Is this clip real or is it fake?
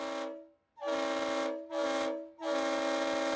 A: real